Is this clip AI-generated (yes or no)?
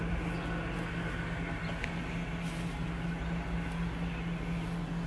no